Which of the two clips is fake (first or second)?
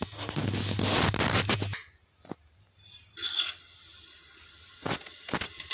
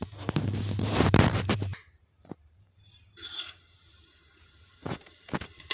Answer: second